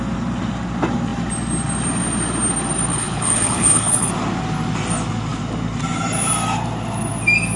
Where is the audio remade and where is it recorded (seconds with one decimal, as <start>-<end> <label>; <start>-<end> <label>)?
0.0-2.9 recorded; 2.9-4.1 remade; 4.1-7.6 recorded